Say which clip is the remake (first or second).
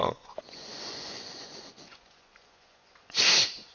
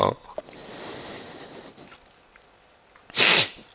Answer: first